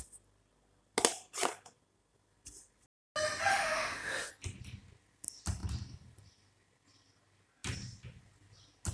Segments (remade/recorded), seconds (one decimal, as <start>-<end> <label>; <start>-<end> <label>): 0.0-3.5 recorded; 3.5-4.3 remade; 4.3-8.9 recorded